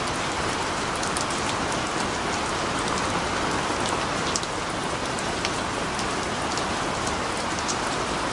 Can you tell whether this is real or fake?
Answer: real